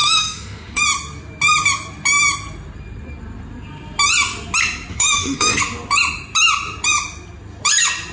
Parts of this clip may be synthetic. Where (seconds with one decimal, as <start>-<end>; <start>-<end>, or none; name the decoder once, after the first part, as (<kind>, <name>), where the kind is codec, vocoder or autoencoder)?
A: 0.0-0.8 (autoencoder, DAC-VAE); 4.9-5.6